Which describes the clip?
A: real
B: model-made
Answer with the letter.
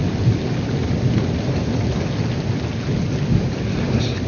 A